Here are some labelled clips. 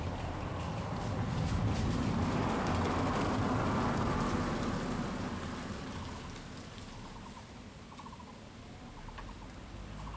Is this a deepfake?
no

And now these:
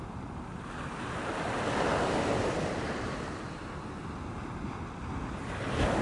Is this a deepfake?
no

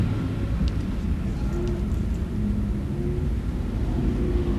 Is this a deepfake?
no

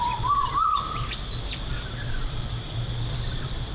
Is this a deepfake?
no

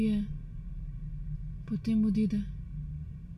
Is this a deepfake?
no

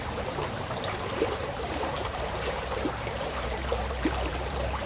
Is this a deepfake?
yes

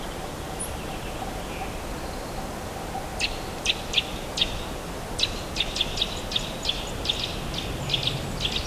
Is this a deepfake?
no